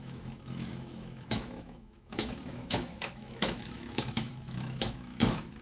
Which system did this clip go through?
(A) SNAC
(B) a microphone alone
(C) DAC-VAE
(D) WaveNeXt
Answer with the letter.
C